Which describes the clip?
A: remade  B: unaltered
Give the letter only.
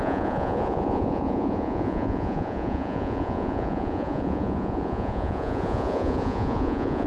A